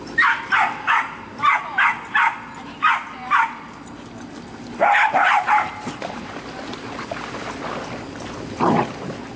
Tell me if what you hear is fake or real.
real